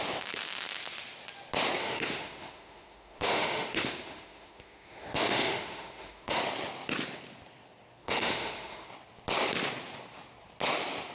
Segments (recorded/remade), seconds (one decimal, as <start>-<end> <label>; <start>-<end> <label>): 0.0-1.8 recorded; 1.8-6.4 remade; 6.4-8.0 recorded; 8.0-8.9 remade; 8.9-11.1 recorded